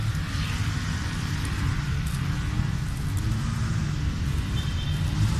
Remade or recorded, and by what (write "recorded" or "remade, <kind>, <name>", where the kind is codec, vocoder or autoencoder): recorded